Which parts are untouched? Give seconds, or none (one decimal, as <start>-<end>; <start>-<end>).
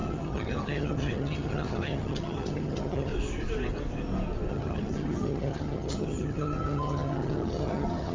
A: 3.1-4.5